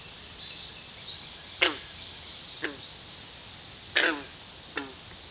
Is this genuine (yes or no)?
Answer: yes